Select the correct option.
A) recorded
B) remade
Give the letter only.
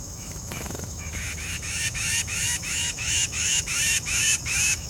B